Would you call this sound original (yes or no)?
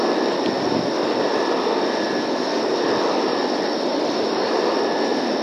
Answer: yes